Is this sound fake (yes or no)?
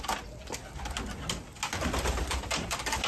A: no